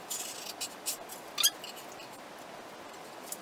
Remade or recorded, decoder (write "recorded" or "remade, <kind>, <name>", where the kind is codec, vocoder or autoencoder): recorded